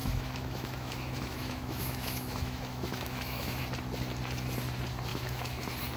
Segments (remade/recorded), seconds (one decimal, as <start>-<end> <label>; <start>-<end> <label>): 0.0-3.6 remade; 3.6-5.1 recorded; 5.1-5.6 remade; 5.6-6.0 recorded